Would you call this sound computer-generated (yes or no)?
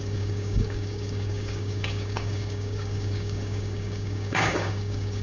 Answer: yes